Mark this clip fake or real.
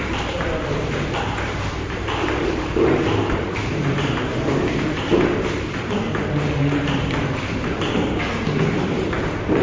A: fake